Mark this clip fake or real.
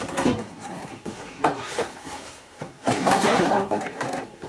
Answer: fake